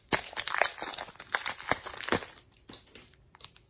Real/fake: real